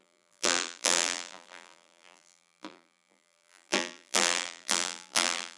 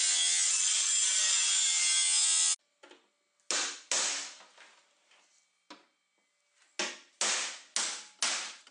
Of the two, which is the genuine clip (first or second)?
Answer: second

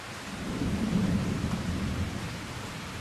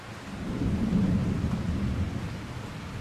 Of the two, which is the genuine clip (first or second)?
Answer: second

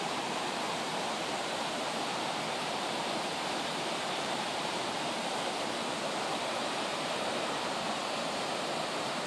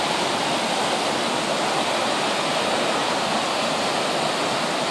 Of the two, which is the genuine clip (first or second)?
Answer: second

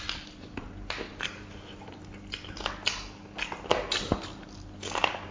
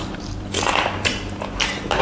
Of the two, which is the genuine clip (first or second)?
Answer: first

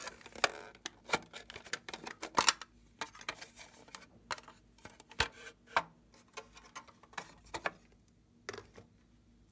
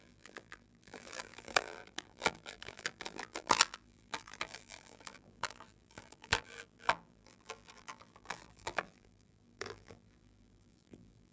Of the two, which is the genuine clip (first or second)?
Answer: first